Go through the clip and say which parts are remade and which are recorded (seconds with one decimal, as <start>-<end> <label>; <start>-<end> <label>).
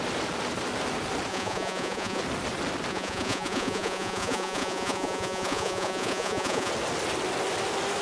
0.0-1.3 recorded; 1.3-2.2 remade; 2.2-2.9 recorded; 2.9-6.7 remade; 6.7-8.0 recorded